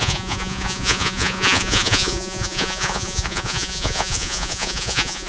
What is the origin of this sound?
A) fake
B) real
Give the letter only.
A